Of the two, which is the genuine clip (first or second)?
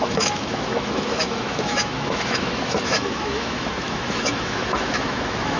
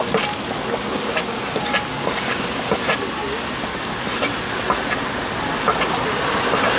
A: second